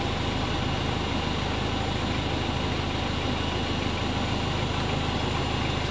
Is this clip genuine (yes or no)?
yes